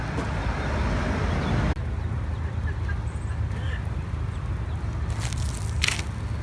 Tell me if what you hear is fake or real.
real